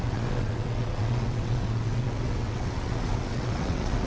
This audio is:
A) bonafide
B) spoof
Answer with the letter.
B